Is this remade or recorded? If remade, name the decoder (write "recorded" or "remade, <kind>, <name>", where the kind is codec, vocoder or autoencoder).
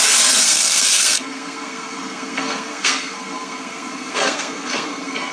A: remade, codec, SNAC